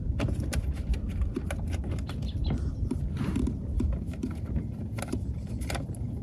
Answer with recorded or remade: recorded